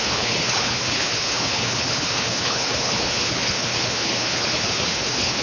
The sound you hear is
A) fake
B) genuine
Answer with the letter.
A